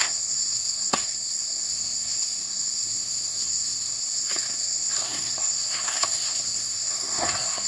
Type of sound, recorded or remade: remade